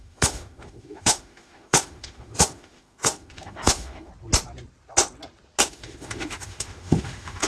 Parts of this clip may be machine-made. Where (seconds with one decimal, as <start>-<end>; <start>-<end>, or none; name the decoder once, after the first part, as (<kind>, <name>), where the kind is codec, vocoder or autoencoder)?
0.0-4.1 (autoencoder, DAC-VAE); 5.6-7.5